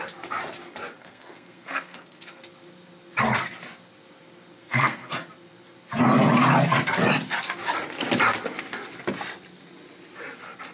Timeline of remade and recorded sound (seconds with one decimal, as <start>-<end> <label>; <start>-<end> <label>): 0.0-1.0 recorded; 1.0-2.4 remade; 2.4-4.6 recorded; 4.6-5.1 remade; 5.1-10.7 recorded